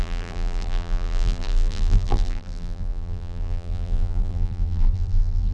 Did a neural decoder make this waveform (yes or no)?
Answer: yes